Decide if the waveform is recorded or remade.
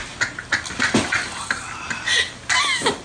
recorded